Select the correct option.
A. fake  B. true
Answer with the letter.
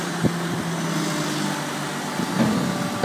B